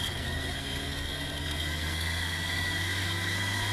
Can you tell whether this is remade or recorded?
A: remade